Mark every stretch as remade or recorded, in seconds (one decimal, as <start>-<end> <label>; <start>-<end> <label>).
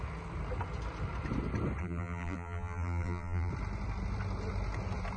0.0-1.8 recorded; 1.8-3.5 remade; 3.5-5.2 recorded